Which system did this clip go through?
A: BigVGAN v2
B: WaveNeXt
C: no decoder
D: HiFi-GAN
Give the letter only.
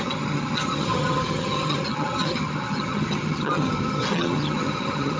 D